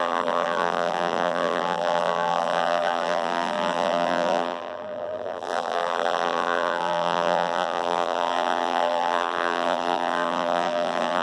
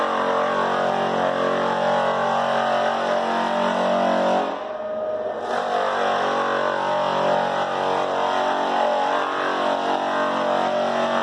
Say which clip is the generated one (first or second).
first